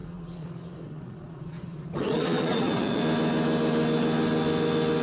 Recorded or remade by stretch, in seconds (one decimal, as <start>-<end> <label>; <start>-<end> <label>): 0.0-3.0 remade; 3.0-5.0 recorded